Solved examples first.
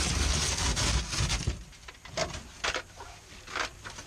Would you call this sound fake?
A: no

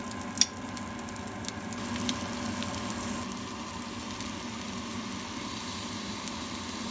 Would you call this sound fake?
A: no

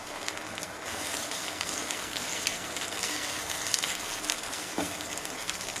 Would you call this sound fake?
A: yes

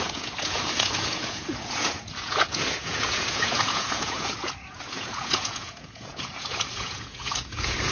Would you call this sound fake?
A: yes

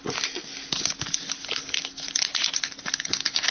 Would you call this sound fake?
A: no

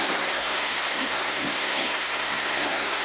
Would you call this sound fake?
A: yes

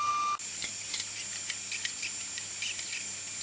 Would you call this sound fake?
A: no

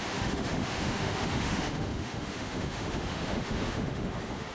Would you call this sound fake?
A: yes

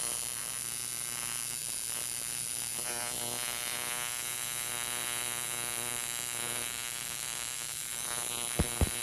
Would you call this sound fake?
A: yes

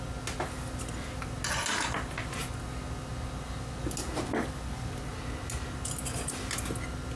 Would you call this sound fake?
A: no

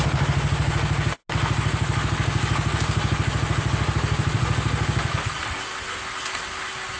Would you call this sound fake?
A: no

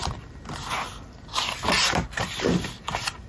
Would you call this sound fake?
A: no